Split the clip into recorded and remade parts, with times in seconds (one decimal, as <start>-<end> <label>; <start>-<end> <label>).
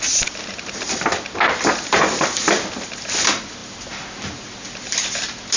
0.0-5.6 recorded